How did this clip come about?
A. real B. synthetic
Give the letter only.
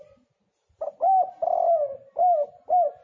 A